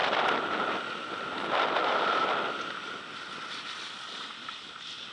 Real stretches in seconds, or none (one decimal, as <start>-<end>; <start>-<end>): 0.0-5.1